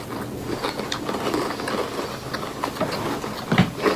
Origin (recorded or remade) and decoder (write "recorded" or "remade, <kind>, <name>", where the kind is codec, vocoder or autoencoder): recorded